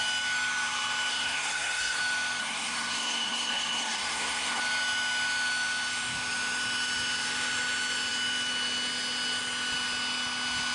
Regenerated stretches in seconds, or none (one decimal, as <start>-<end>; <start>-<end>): 1.1-2.0; 2.4-4.6